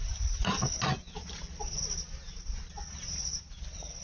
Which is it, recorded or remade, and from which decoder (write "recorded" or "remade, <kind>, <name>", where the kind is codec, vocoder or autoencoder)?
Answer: recorded